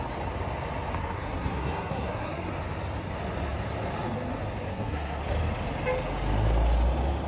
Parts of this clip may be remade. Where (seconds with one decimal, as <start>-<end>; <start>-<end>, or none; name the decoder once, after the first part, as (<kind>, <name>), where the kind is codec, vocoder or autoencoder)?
1.0-2.5 (codec, SNAC); 4.7-5.2